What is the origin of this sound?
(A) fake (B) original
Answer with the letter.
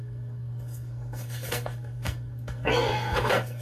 A